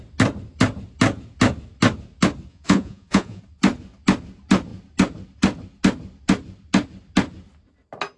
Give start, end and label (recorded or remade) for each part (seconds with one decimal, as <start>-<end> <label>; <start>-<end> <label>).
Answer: 0.0-2.5 recorded; 2.5-3.4 remade; 3.4-8.2 recorded